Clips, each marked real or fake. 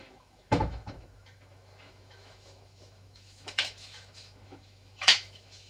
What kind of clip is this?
fake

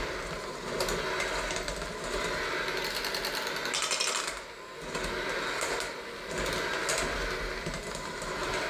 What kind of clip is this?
real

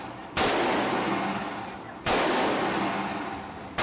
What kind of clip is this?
real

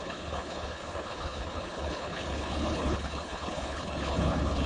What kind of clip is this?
fake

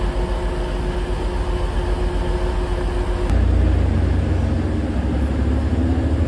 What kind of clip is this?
real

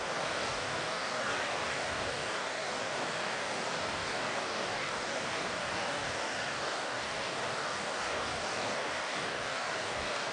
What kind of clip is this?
fake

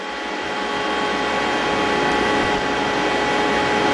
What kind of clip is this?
real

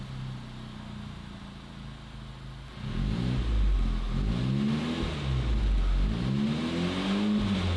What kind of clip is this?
real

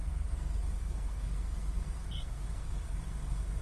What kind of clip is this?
fake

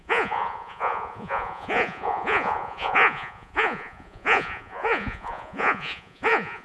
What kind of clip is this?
fake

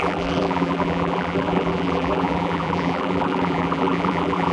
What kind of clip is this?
fake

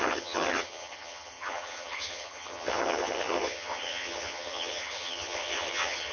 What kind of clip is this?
fake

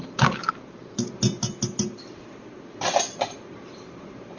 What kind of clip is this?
real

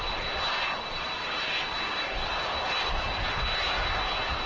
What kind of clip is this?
real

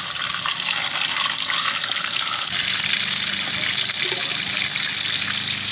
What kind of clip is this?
real